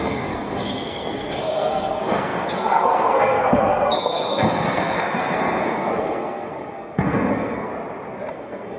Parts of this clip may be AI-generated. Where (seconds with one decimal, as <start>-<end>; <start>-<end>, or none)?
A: 0.0-7.7; 8.3-8.8